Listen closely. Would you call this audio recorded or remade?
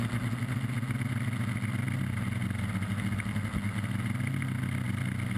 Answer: recorded